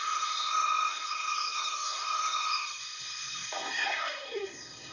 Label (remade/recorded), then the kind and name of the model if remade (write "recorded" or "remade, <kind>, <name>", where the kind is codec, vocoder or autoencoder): remade, codec, SNAC